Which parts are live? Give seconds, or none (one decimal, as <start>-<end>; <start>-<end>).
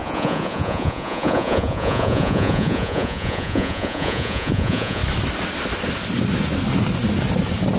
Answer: 5.0-7.8